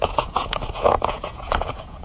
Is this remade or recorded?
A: remade